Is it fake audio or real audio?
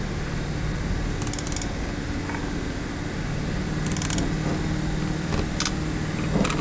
real